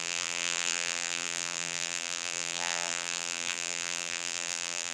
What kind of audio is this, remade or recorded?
remade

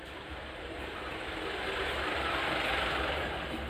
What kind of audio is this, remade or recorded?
remade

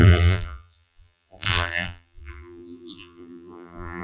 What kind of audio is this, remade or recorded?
remade